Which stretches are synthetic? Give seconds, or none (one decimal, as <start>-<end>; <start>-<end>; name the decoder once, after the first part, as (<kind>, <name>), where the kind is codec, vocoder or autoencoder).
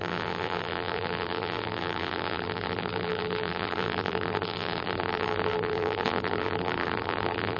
0.0-7.6 (vocoder, BigVGAN v2)